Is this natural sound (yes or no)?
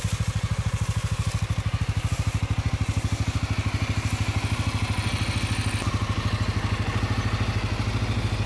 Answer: yes